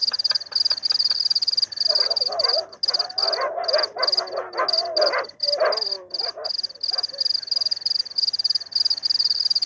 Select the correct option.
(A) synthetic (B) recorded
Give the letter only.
B